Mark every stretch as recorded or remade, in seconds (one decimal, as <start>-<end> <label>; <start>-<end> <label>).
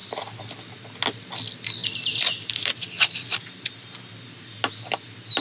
0.0-0.5 remade; 0.5-1.8 recorded; 1.8-3.4 remade; 3.4-5.4 recorded